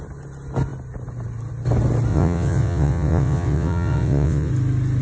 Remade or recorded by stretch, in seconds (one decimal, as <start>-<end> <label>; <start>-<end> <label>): 0.0-2.1 recorded; 2.1-4.5 remade; 4.5-5.0 recorded

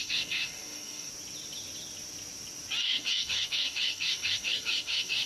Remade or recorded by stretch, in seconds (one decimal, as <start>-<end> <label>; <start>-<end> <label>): 0.0-1.1 remade; 1.1-2.8 recorded; 2.8-5.3 remade

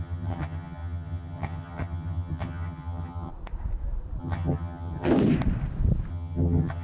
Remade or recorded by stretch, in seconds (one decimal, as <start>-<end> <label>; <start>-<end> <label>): 0.0-3.3 remade; 3.3-4.2 recorded; 4.2-5.1 remade; 5.1-6.1 recorded; 6.1-6.8 remade

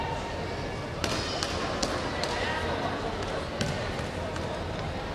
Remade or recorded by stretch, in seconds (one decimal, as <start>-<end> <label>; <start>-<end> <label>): 0.0-5.1 recorded